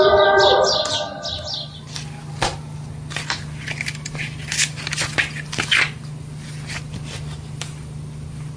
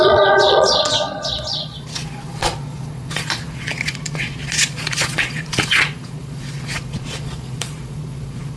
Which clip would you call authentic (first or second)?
first